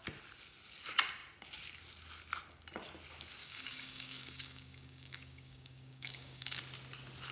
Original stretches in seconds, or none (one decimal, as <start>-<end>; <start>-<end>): 0.0-3.4; 6.6-7.3